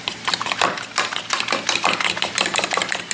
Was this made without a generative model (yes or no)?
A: yes